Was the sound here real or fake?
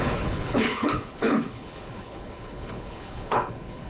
fake